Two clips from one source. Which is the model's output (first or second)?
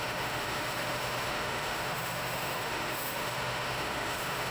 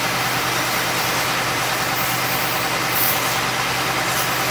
first